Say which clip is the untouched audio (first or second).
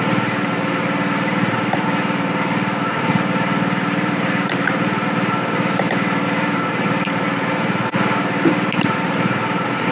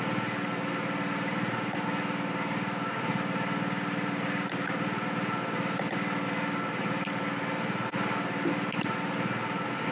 second